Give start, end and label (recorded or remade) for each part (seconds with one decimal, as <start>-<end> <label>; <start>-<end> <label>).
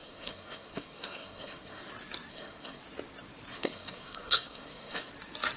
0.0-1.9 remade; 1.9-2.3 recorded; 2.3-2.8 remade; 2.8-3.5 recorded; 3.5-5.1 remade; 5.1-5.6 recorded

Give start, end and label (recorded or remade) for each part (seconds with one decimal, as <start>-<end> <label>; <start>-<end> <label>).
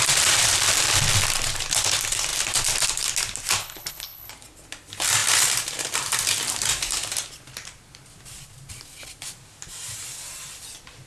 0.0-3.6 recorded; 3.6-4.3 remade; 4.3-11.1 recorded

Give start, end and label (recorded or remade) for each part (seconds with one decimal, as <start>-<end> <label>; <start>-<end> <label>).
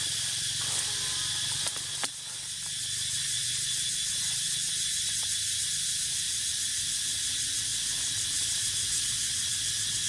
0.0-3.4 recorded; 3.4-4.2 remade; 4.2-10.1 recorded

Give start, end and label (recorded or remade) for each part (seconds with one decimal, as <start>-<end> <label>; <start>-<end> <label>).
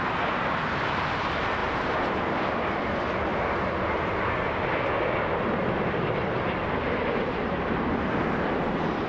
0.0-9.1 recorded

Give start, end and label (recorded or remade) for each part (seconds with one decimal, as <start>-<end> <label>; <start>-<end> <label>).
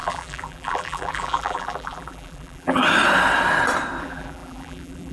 0.0-2.8 remade; 2.8-4.0 recorded; 4.0-5.1 remade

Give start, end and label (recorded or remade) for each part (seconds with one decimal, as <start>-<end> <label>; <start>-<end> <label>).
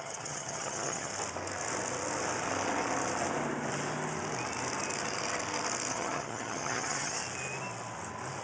0.0-1.1 remade; 1.1-5.9 recorded; 5.9-7.2 remade; 7.2-8.4 recorded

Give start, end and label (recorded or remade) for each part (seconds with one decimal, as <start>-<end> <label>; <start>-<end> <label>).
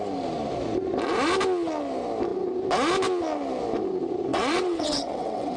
0.0-4.3 recorded; 4.3-5.6 remade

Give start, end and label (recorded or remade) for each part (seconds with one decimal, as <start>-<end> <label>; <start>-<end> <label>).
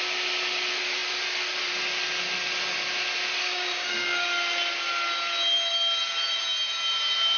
0.0-3.4 recorded; 3.4-4.3 remade; 4.3-7.4 recorded